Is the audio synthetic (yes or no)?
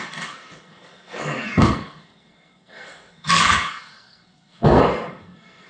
yes